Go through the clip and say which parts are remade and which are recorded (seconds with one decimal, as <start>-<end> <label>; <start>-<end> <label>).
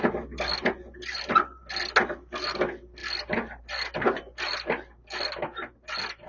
0.0-6.3 recorded